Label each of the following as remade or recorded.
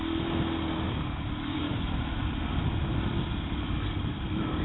recorded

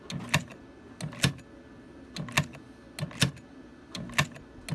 recorded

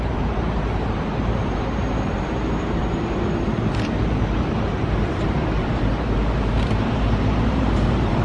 remade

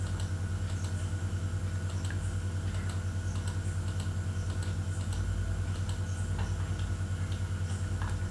recorded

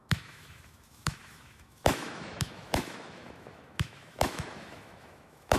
remade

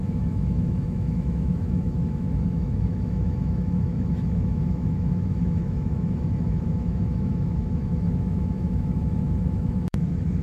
remade